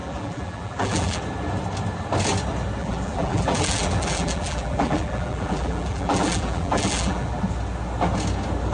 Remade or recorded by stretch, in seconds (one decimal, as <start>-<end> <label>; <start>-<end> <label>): 0.0-1.2 remade; 1.2-2.8 recorded; 2.8-7.4 remade; 7.4-8.7 recorded